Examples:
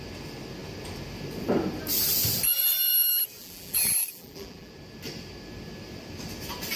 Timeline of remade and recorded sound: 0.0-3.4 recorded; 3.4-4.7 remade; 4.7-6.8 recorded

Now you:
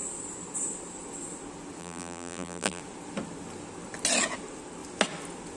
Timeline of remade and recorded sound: 0.0-1.8 recorded; 1.8-2.8 remade; 2.8-5.6 recorded

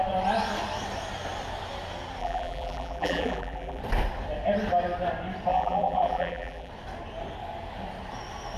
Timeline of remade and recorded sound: 0.0-2.2 recorded; 2.2-3.8 remade; 3.8-5.5 recorded; 5.5-6.7 remade; 6.7-8.6 recorded

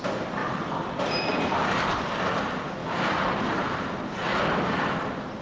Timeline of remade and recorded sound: 0.0-5.4 remade

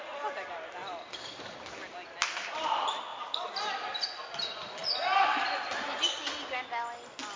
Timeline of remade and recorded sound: 0.0-0.8 recorded; 0.8-1.4 remade; 1.4-3.1 recorded; 3.1-4.2 remade; 4.2-4.8 recorded; 4.8-6.0 remade; 6.0-7.4 recorded